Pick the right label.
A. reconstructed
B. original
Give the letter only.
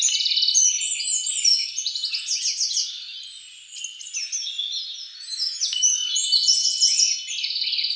B